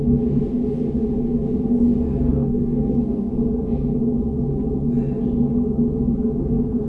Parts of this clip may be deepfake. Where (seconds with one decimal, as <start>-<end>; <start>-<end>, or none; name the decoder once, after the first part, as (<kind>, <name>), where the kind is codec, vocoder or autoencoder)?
0.0-0.4 (codec, SNAC); 2.2-3.3; 6.4-6.9